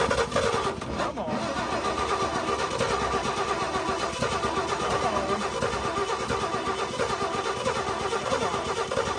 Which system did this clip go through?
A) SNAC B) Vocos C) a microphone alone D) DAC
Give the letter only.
C